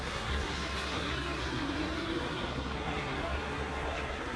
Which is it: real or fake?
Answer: fake